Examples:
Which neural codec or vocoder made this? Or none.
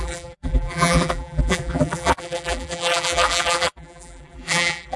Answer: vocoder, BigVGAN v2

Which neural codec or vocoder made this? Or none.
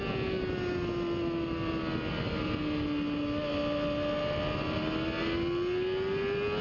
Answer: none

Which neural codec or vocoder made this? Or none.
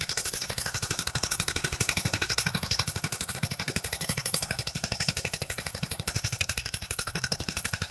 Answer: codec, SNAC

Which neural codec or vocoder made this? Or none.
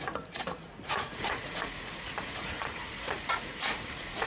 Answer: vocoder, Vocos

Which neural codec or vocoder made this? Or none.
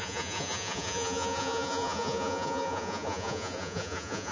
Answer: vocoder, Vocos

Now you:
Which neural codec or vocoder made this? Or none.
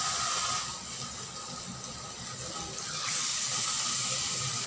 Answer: none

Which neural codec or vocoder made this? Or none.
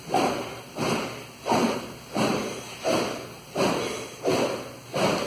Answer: none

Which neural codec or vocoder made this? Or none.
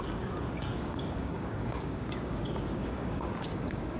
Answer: codec, DAC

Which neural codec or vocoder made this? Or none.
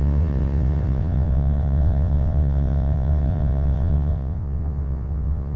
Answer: vocoder, WaveNeXt